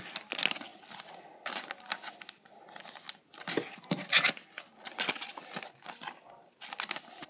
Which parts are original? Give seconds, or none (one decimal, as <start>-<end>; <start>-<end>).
0.0-7.3